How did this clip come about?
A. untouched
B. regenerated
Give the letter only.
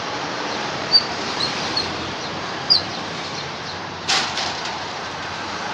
B